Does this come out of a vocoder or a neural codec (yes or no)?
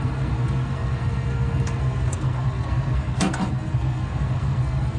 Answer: yes